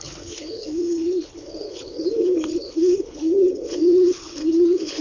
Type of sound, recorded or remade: remade